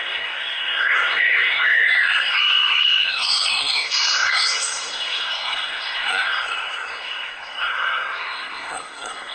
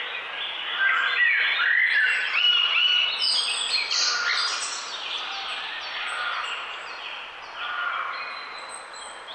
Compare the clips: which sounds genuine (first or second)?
second